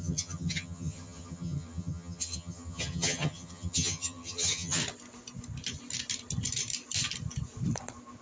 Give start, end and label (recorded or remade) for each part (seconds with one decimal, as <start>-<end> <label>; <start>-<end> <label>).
0.0-4.8 remade; 4.8-8.2 recorded